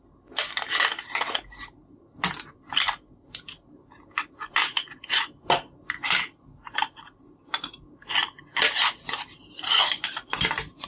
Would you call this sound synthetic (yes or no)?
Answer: no